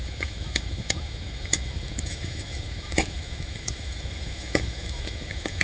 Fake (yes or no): yes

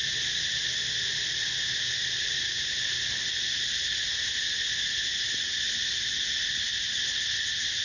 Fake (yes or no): no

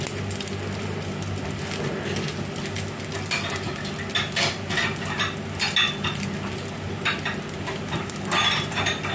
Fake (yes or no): no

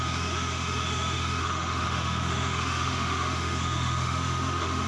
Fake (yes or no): yes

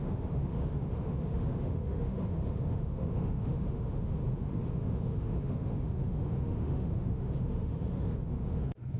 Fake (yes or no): yes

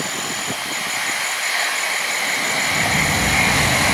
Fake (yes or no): no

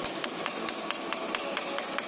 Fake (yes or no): no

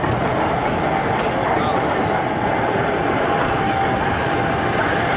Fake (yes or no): no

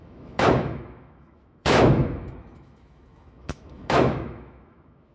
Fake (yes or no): yes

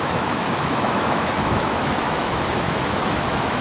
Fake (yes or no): yes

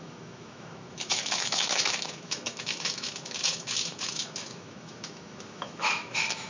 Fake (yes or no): yes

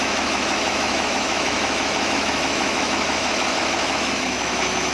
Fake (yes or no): yes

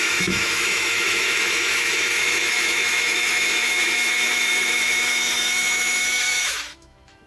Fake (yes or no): yes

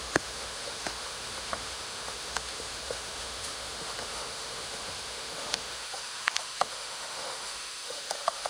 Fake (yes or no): yes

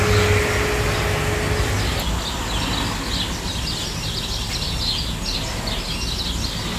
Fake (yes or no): no